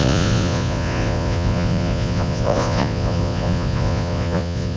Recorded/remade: remade